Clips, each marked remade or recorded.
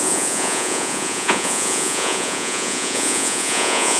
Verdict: remade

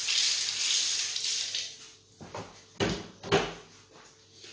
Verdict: recorded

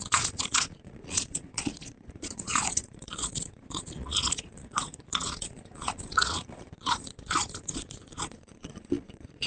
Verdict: remade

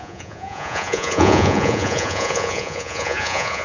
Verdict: remade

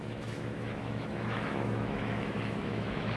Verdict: remade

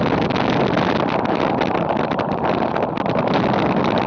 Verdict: recorded